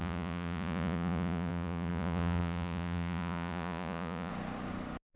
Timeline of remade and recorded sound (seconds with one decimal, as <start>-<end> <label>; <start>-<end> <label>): 0.0-4.3 remade; 4.3-5.2 recorded